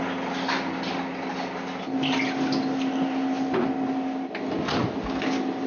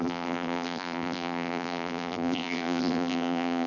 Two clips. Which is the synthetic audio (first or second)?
second